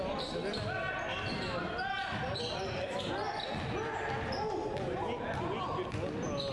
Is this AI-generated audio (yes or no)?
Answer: no